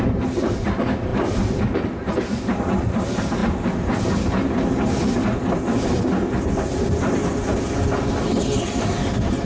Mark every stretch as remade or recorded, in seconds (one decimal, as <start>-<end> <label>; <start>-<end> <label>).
0.0-9.5 recorded